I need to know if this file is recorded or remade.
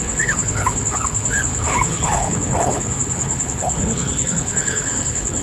remade